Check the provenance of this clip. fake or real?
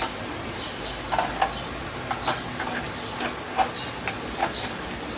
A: real